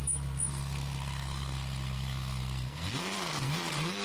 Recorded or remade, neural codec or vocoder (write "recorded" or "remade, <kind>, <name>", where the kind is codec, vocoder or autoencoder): remade, codec, SNAC